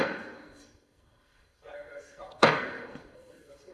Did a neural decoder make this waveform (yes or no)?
yes